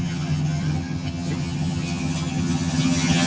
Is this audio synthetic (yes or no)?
yes